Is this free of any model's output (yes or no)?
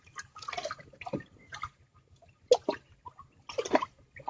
yes